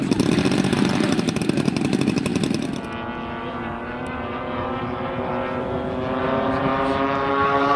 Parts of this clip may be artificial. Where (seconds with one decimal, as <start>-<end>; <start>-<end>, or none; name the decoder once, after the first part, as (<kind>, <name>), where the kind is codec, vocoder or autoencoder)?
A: 0.0-2.3 (vocoder, BigVGAN v2); 3.5-5.3; 6.2-6.7; 7.3-7.8